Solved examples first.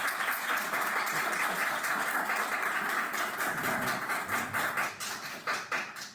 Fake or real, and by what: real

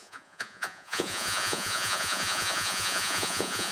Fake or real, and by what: fake, vocoder, Vocos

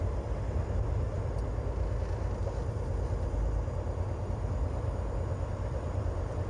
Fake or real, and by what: real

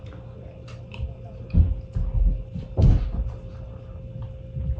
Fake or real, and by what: real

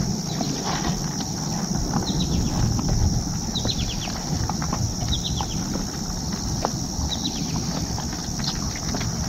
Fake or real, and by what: real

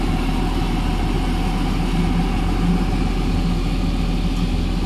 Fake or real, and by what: real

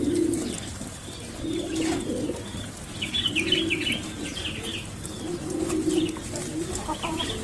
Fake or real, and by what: real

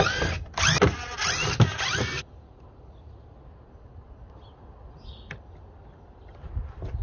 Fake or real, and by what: real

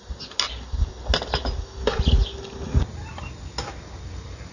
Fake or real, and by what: real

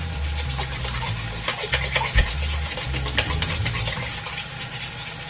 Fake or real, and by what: real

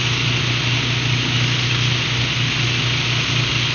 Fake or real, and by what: real